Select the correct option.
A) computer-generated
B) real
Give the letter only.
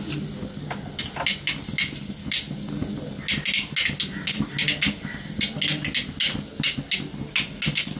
B